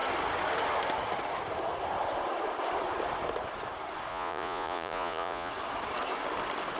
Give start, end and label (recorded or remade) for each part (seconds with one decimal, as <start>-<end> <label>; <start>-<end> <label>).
0.0-4.1 recorded; 4.1-5.5 remade; 5.5-6.8 recorded